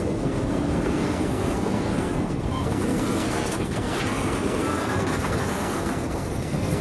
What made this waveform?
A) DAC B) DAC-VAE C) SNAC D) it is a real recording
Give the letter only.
C